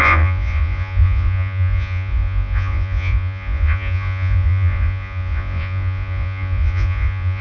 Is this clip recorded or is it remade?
remade